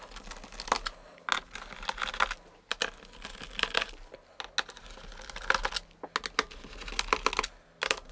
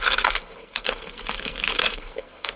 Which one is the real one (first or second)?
first